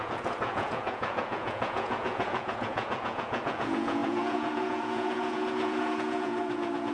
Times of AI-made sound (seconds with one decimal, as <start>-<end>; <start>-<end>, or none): 0.0-6.9